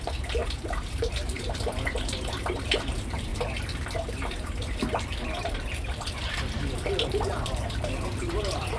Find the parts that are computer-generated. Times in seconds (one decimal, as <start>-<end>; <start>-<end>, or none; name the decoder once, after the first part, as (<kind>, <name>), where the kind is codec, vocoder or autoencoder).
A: 0.0-3.3 (vocoder, BigVGAN v2); 4.1-8.8